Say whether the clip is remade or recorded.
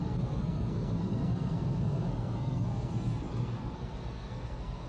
remade